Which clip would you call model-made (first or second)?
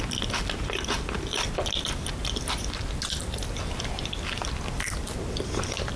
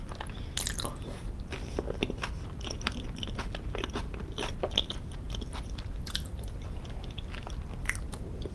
second